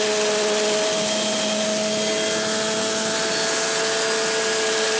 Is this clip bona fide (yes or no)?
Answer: yes